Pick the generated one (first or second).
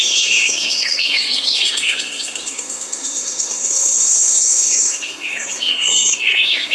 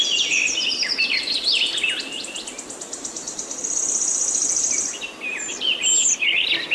first